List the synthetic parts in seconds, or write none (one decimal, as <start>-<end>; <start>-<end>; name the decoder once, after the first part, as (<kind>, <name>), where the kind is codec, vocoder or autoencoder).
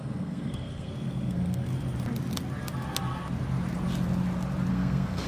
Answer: 0.0-1.7 (codec, SNAC); 4.7-5.3